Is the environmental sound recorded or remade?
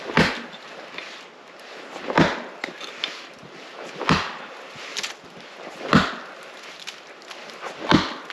recorded